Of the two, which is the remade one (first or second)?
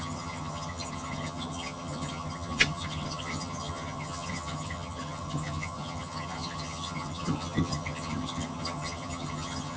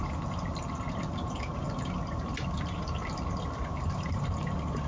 first